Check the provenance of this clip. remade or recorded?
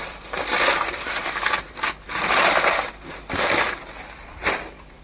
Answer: remade